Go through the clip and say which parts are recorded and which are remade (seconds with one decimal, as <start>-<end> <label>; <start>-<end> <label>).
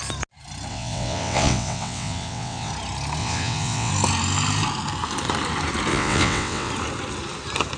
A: 0.0-0.7 recorded; 0.7-2.7 remade; 2.7-3.2 recorded; 3.2-3.9 remade; 3.9-5.9 recorded; 5.9-6.7 remade; 6.7-7.8 recorded